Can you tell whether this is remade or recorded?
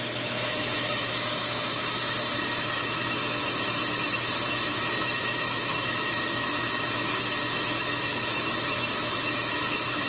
remade